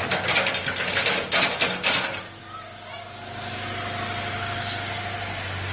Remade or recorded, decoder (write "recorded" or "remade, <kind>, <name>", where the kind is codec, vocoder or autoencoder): recorded